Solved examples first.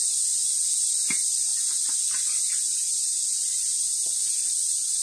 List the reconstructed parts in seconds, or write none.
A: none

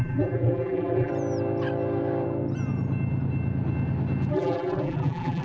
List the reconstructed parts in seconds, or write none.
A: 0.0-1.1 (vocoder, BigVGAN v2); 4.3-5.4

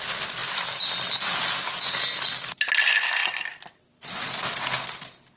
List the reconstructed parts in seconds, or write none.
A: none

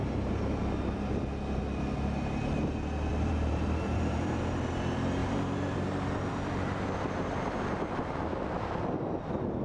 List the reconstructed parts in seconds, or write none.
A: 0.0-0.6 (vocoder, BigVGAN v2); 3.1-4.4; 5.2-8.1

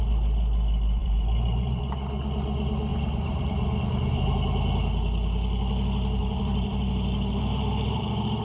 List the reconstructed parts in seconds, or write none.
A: 1.0-1.8 (vocoder, BigVGAN v2); 2.9-4.3; 6.2-8.4

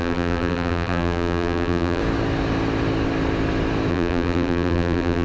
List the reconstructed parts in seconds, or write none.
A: 0.0-2.0 (vocoder, BigVGAN v2); 3.9-5.2

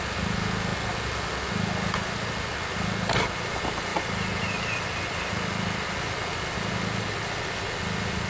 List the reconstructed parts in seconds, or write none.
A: none

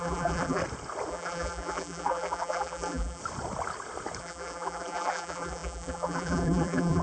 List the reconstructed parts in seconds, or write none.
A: 0.0-0.6 (vocoder, BigVGAN v2); 1.1-3.2; 4.2-7.0